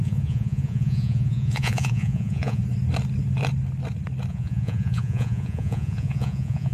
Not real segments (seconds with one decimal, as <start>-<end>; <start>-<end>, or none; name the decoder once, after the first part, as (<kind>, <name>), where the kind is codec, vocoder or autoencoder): 0.0-2.6 (vocoder, Vocos); 4.3-6.7